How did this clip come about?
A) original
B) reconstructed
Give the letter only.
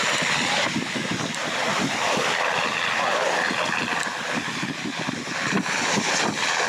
A